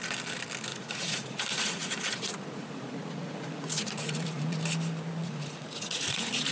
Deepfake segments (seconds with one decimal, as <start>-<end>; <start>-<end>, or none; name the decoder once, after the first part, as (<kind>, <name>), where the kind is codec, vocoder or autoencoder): 0.7-4.6 (vocoder, Vocos); 5.2-6.5